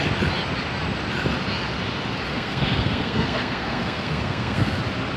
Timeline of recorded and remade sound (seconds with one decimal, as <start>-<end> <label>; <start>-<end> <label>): 0.0-2.3 recorded; 2.3-4.8 remade; 4.8-5.2 recorded